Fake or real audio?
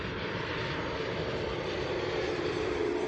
fake